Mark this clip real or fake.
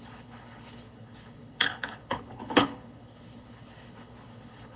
fake